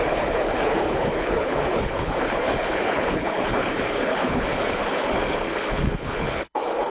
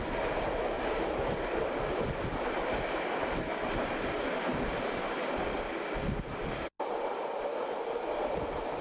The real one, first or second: second